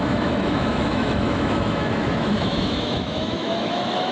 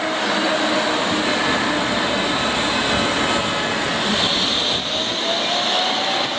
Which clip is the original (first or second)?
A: second